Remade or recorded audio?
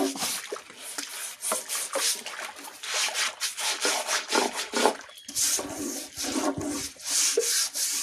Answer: recorded